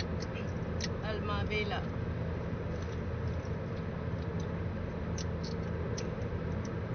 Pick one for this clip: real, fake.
real